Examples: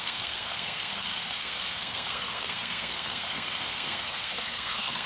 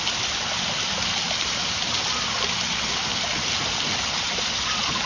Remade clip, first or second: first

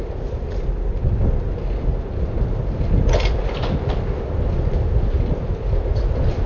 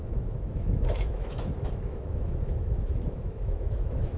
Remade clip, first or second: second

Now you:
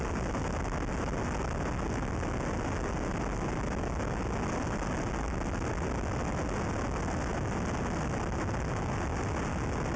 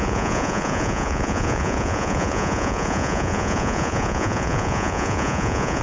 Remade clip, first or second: second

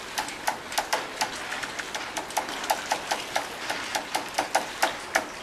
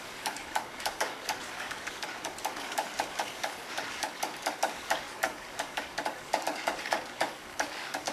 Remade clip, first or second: second